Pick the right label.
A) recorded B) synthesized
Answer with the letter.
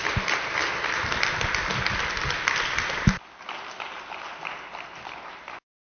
A